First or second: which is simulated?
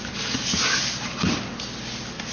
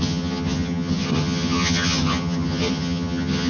second